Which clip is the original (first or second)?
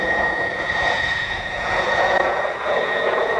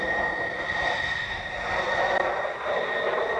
second